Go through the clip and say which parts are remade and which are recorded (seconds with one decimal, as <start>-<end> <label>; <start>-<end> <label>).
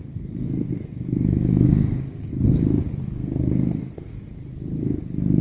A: 0.0-2.3 remade; 2.3-3.0 recorded; 3.0-4.3 remade; 4.3-5.4 recorded